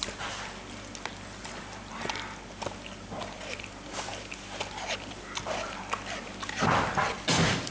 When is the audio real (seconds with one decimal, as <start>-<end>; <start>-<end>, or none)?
0.0-7.7